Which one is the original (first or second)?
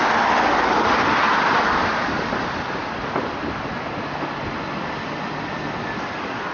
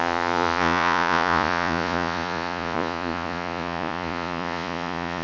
first